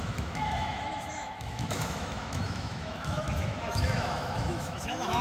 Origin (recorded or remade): remade